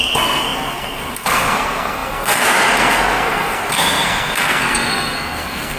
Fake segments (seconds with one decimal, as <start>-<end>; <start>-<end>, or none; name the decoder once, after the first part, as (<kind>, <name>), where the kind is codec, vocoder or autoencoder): 0.0-5.8 (codec, SNAC)